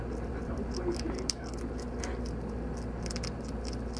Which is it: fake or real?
real